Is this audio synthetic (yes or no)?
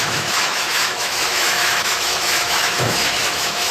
yes